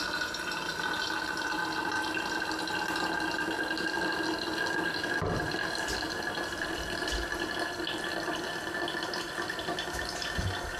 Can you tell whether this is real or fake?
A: real